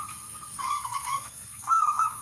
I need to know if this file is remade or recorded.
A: remade